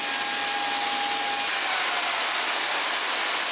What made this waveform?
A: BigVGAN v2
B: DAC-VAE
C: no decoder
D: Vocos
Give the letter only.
C